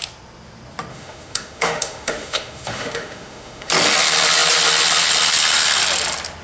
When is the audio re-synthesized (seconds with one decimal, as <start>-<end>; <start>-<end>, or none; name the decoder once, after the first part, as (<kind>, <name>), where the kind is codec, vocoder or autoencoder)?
0.9-3.7 (autoencoder, DAC-VAE)